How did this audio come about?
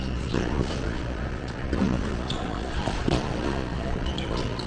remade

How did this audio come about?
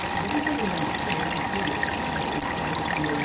recorded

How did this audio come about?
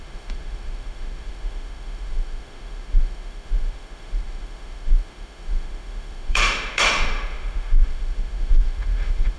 remade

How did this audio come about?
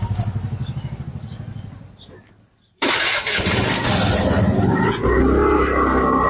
recorded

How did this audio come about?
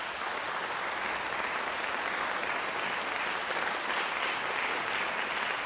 recorded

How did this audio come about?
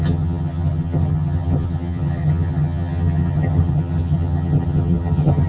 remade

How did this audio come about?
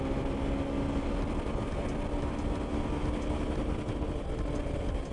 recorded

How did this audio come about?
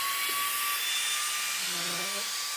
recorded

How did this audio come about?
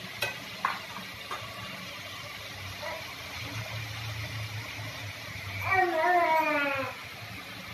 recorded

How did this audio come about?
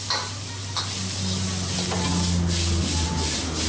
recorded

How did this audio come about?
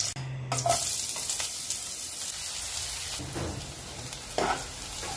recorded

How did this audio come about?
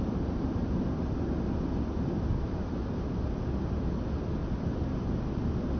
recorded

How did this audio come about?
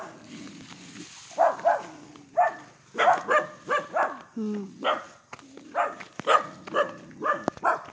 recorded